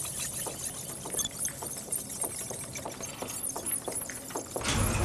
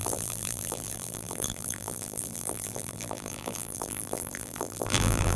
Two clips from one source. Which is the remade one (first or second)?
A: second